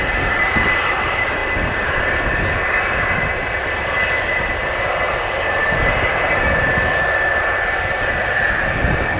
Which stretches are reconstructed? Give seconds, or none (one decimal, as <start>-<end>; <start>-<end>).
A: none

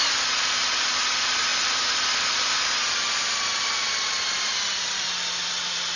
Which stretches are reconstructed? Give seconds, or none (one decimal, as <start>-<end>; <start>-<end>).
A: none